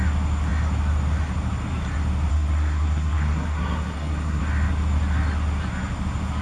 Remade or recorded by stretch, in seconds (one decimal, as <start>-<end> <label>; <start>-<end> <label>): 0.0-2.3 recorded; 2.3-4.4 remade; 4.4-6.4 recorded